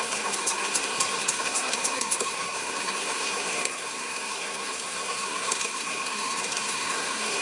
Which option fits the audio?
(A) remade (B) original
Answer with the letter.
A